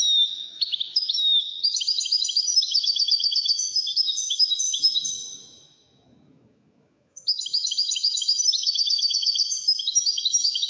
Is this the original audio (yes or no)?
no